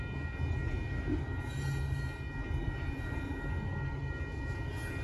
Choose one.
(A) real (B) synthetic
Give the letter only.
A